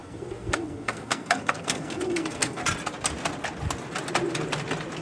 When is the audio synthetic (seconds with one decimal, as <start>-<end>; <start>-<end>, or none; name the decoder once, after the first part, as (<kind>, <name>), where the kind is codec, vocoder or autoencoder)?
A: 0.0-2.6 (codec, SNAC)